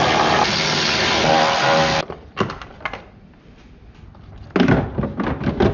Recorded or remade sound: recorded